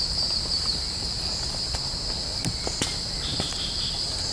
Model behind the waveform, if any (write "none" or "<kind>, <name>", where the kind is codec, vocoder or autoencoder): none